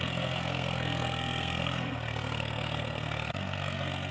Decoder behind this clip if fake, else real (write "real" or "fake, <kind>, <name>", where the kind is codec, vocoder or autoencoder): fake, codec, SNAC